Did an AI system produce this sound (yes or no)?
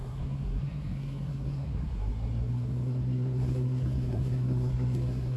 yes